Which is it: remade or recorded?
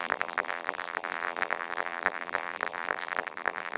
remade